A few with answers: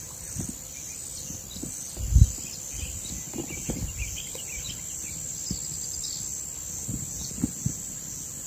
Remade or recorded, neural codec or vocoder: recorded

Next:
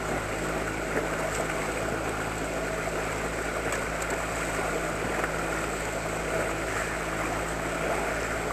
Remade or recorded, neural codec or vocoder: recorded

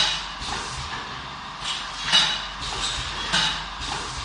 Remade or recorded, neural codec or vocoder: recorded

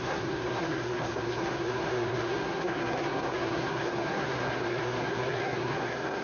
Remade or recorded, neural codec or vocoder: remade, codec, SNAC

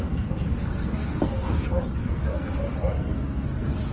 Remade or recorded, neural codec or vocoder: remade, codec, SNAC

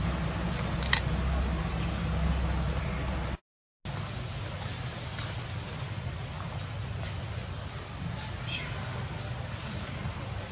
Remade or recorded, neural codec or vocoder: recorded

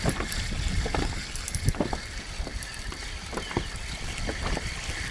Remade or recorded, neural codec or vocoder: recorded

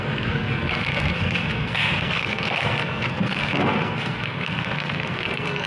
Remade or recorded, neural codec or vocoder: remade, codec, SNAC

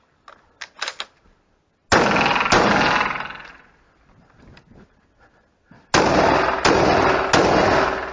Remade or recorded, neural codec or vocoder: recorded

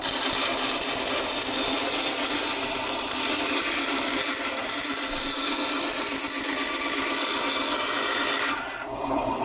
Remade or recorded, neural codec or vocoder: recorded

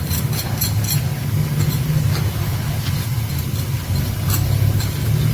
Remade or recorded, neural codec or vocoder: recorded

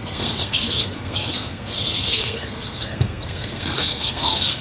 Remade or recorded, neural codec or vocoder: remade, codec, SNAC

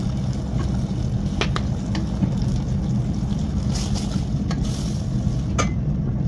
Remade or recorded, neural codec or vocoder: recorded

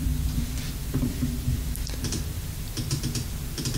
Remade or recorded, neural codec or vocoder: remade, vocoder, BigVGAN v2